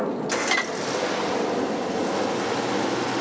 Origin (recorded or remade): recorded